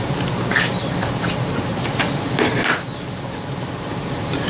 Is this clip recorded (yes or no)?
no